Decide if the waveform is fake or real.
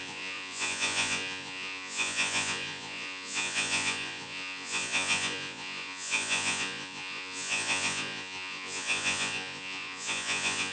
fake